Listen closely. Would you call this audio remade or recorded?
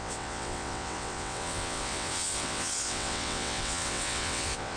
remade